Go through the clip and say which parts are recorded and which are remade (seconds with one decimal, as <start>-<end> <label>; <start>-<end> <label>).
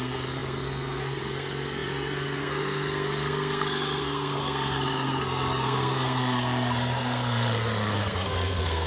0.0-8.9 remade